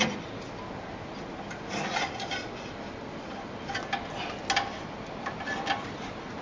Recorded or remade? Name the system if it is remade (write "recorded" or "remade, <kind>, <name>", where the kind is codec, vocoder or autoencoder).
recorded